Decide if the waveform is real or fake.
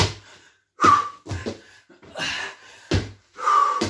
real